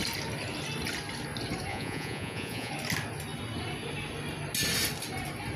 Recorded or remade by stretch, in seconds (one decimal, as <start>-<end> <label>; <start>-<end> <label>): 0.0-1.7 recorded; 1.7-2.7 remade; 2.7-5.6 recorded

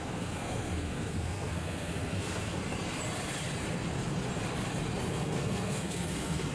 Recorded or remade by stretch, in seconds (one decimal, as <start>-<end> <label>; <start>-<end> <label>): 0.0-2.6 remade; 2.6-5.1 recorded; 5.1-6.5 remade